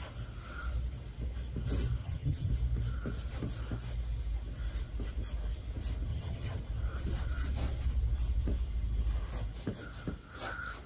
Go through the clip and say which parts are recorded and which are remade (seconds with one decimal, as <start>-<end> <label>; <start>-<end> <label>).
0.0-2.0 recorded; 2.0-2.5 remade; 2.5-6.1 recorded; 6.1-6.6 remade; 6.6-10.9 recorded